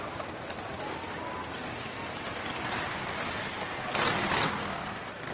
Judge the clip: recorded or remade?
recorded